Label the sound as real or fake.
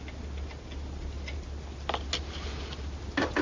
real